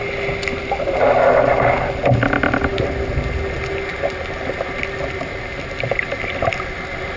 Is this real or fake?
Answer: real